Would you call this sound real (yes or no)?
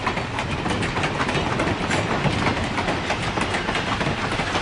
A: yes